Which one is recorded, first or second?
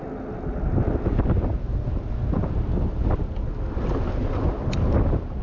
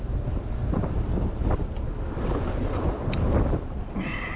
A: first